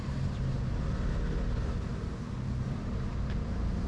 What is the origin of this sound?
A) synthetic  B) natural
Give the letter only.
A